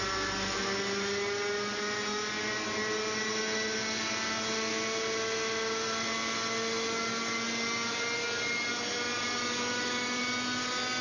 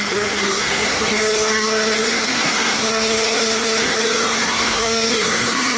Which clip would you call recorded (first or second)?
first